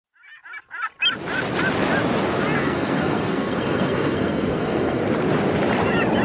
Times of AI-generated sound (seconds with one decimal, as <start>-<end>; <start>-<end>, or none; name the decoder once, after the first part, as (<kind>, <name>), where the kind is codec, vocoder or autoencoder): 2.6-5.0 (codec, SNAC)